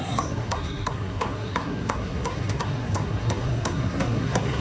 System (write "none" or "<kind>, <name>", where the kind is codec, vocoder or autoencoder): codec, SNAC